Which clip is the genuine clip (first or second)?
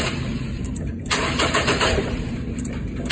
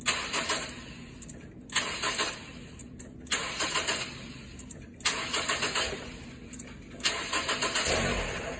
second